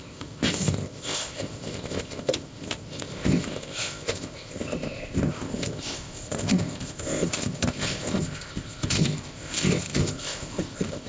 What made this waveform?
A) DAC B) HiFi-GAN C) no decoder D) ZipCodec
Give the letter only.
D